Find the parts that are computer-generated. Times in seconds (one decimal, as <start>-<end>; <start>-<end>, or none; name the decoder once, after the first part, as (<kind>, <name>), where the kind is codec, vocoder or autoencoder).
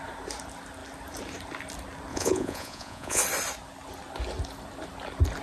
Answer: 2.1-3.2 (vocoder, Vocos)